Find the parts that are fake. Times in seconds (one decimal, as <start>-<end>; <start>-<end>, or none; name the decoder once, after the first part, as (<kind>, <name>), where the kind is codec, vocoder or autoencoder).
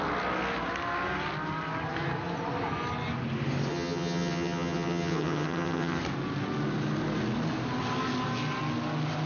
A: 3.7-6.0 (vocoder, HiFi-GAN)